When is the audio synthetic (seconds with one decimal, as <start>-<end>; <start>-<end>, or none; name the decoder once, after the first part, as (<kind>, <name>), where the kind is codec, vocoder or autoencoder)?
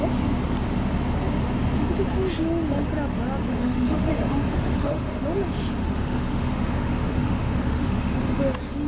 3.5-4.1 (autoencoder, DAC-VAE); 4.5-5.2; 5.8-8.1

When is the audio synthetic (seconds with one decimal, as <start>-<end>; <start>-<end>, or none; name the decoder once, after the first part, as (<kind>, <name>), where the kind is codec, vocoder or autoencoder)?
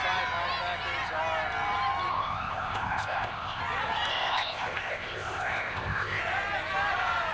2.1-3.6 (codec, ZipCodec); 4.1-6.2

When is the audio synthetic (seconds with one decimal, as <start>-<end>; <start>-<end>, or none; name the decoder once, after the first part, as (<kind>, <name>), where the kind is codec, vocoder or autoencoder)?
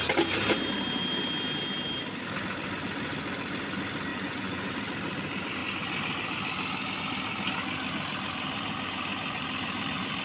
4.1-4.7 (vocoder, Vocos)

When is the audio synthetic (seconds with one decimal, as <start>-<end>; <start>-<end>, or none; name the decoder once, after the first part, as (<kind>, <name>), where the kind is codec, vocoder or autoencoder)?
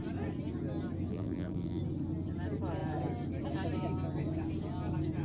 1.1-1.8 (vocoder, BigVGAN v2)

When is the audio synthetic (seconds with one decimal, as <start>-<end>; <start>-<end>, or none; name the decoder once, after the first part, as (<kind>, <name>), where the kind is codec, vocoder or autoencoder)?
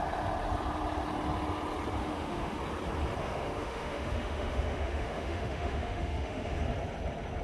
2.0-2.6 (autoencoder, DAC-VAE); 3.2-6.6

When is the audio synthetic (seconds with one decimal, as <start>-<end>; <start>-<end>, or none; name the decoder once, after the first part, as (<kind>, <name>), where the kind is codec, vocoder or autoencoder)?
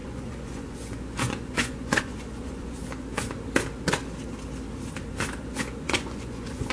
0.0-2.8 (vocoder, Vocos); 5.4-6.7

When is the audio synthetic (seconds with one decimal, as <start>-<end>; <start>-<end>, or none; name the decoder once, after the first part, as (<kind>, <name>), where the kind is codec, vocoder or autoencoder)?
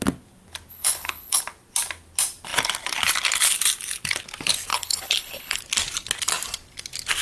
0.7-1.4 (codec, HILCodec); 4.7-5.6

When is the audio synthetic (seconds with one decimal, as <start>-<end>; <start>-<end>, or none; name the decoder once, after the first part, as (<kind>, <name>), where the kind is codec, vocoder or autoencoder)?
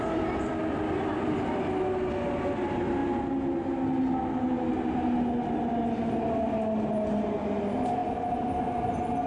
none